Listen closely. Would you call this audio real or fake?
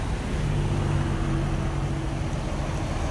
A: real